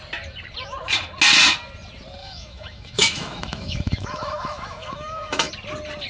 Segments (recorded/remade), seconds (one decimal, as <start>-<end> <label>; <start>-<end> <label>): 0.0-2.2 recorded; 2.2-5.5 remade; 5.5-6.1 recorded